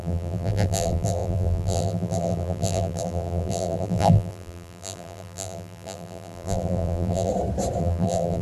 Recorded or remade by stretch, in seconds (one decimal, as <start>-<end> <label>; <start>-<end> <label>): 0.0-7.3 remade; 7.3-7.8 recorded; 7.8-8.4 remade